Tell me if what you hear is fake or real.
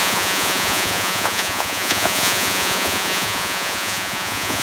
fake